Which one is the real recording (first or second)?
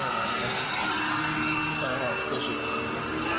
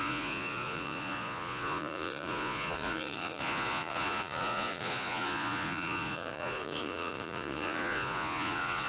first